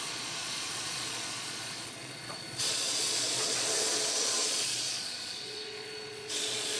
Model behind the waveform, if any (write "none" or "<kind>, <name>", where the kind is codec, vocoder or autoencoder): vocoder, Vocos